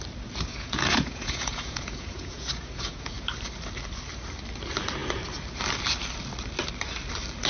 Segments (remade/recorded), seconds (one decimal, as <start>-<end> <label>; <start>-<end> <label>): 0.0-0.5 recorded; 0.5-3.1 remade; 3.1-7.5 recorded